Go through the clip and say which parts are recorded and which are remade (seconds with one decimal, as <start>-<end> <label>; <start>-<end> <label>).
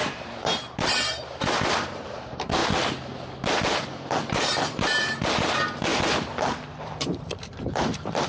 0.0-2.6 remade; 2.6-4.3 recorded; 4.3-5.9 remade; 5.9-6.8 recorded; 6.8-8.3 remade